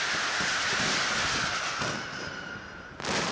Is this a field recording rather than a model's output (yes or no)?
yes